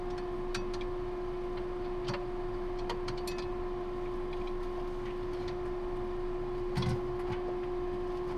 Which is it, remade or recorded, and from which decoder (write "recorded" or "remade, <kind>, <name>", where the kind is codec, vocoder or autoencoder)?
recorded